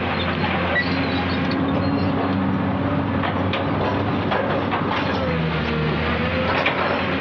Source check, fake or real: real